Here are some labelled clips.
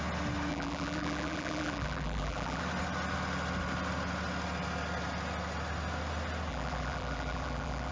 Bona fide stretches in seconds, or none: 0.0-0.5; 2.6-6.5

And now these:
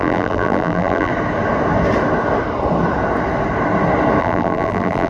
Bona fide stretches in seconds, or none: 1.1-4.2

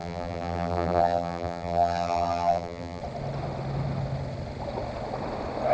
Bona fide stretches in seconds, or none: 3.0-5.7

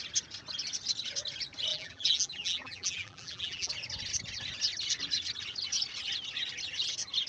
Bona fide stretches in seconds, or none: 0.0-1.7; 3.7-7.3